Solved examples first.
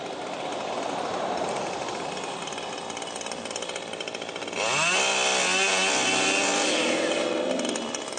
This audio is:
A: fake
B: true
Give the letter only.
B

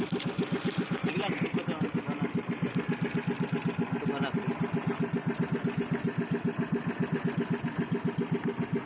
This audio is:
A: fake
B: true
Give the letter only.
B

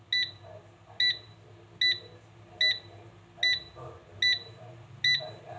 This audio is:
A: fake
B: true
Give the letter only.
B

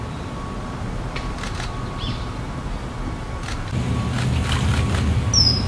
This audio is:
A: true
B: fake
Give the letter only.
A